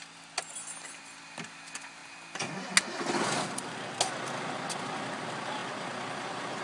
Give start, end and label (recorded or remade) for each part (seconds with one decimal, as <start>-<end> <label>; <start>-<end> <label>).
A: 0.0-6.6 recorded